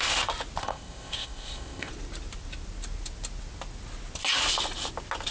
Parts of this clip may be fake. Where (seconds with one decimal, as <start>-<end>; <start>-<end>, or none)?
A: 0.6-1.9